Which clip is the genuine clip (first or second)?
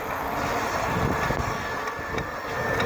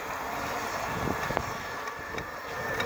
first